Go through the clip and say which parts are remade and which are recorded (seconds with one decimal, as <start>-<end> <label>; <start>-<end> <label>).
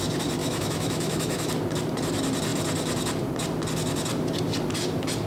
0.0-0.4 recorded; 0.4-1.5 remade; 1.5-5.3 recorded